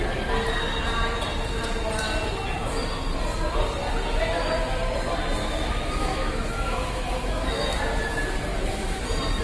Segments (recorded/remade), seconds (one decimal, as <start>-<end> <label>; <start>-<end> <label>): 0.0-5.4 recorded; 5.4-7.8 remade; 7.8-8.5 recorded; 8.5-9.0 remade; 9.0-9.4 recorded